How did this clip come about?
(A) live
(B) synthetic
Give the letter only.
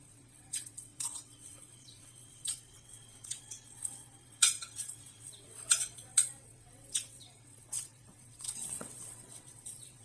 B